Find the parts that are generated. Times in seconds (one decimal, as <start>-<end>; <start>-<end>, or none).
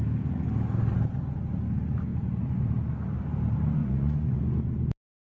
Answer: 3.8-4.4